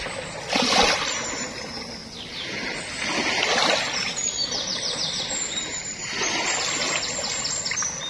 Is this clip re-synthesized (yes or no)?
no